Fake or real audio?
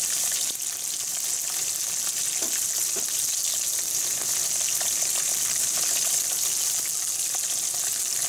real